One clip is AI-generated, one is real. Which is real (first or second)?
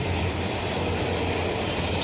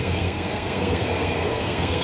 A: first